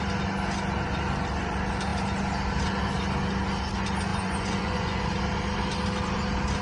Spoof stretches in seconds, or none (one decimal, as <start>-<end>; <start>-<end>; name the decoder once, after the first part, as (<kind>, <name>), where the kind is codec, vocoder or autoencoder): 4.1-5.1 (vocoder, Vocos)